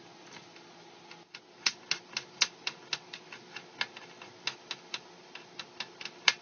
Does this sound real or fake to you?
real